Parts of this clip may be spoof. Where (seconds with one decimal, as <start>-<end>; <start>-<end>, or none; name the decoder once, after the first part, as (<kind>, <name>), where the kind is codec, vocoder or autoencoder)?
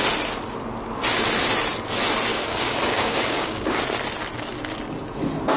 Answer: 2.3-3.8 (codec, DAC)